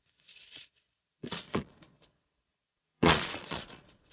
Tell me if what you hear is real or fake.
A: fake